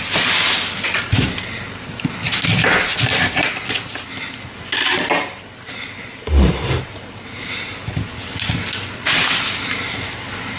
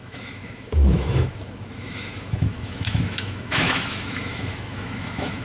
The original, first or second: first